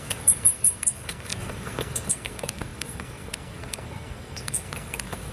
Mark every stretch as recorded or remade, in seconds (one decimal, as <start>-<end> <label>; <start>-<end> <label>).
0.0-5.3 remade